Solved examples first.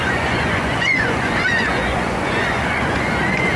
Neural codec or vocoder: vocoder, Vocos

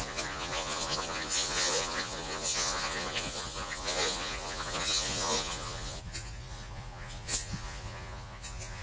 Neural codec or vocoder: vocoder, Vocos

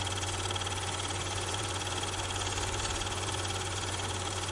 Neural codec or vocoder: vocoder, Vocos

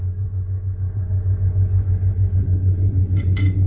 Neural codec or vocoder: vocoder, Vocos